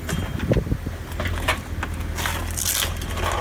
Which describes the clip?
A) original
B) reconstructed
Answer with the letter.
A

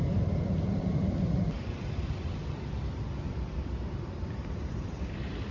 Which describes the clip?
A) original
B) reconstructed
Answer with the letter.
B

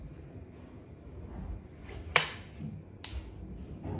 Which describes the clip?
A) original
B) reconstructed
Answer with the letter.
A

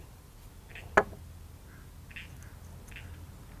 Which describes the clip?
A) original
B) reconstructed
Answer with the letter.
A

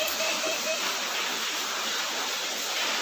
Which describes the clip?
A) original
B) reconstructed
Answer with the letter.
B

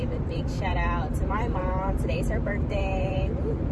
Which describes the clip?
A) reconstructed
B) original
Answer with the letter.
A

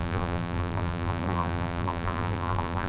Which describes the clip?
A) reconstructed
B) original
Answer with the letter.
A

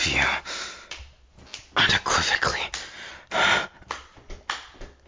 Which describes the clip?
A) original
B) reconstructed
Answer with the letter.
A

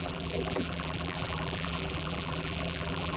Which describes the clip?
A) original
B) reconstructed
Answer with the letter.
B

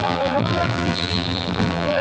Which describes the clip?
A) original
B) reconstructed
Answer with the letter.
B